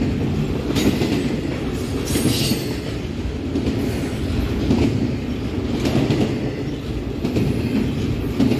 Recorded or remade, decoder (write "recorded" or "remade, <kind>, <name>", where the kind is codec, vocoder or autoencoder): recorded